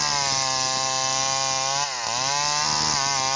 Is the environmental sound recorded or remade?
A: recorded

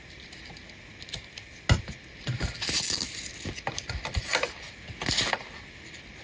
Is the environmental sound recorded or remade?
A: recorded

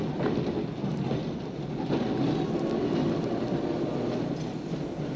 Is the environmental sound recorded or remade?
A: recorded